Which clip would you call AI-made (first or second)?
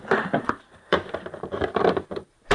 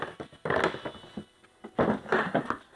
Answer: first